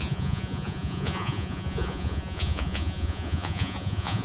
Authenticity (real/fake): fake